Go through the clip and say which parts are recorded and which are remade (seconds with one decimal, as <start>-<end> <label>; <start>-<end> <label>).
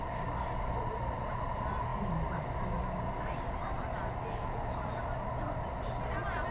0.0-6.5 recorded